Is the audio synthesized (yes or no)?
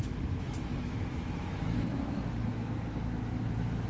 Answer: yes